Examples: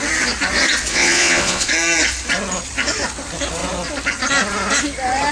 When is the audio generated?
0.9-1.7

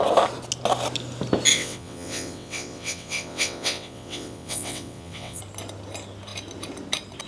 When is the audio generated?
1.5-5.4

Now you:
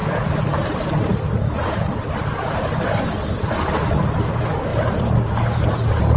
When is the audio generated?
none

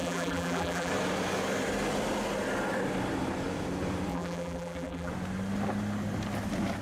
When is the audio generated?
0.0-0.9; 4.1-5.1

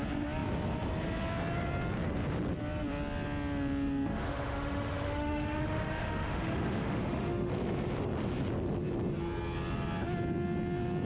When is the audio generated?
4.1-7.5

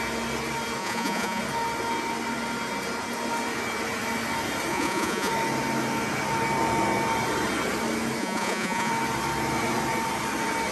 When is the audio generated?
0.8-1.4; 4.7-5.3; 8.2-8.9

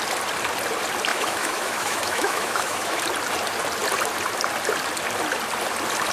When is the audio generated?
1.1-3.0

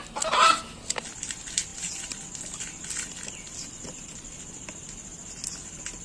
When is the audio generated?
none